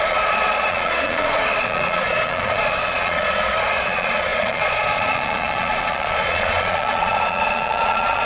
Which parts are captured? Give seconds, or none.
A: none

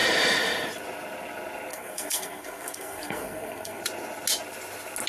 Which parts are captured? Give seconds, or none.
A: 0.0-1.7; 3.8-5.1

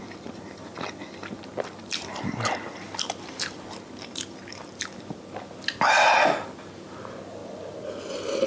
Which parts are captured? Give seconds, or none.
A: 0.0-8.5